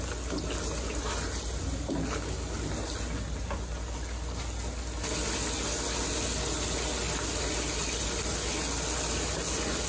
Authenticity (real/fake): real